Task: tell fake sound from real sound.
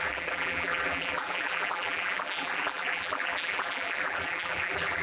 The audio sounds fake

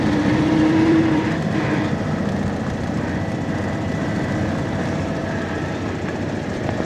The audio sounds fake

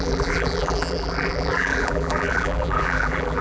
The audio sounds fake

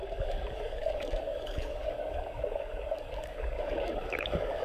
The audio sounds fake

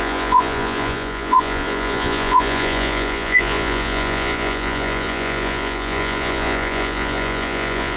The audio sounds fake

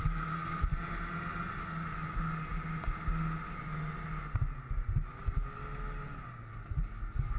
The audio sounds real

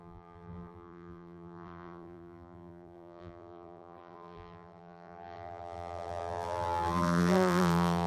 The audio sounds fake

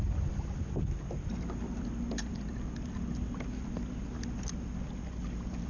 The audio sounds real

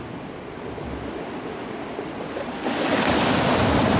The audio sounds real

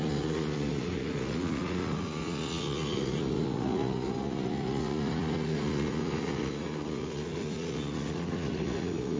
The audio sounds fake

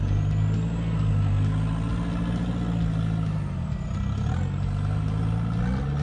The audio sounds real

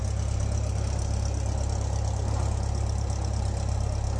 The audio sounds real